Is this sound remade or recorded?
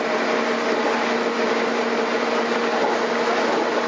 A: recorded